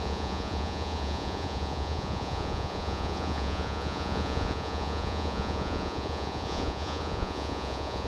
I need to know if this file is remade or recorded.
remade